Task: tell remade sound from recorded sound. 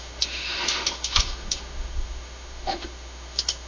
remade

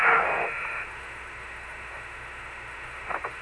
remade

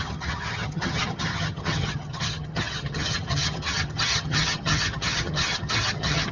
remade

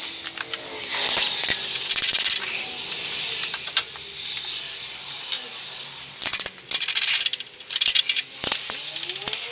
recorded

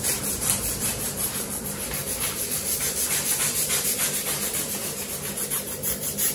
remade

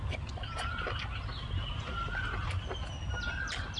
recorded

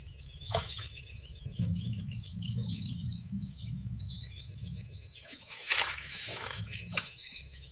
remade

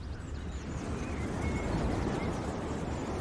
recorded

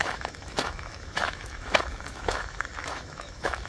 remade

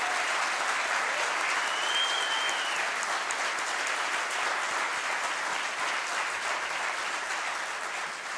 recorded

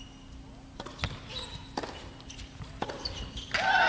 recorded